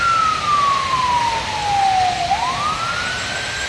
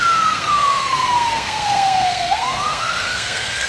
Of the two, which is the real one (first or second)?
first